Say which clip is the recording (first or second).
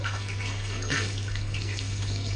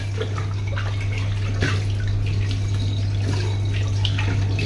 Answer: second